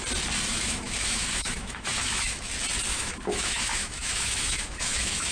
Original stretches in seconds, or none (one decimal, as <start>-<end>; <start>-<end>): 0.0-0.5; 2.5-2.9